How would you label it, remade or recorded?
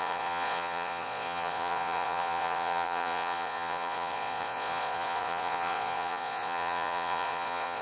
remade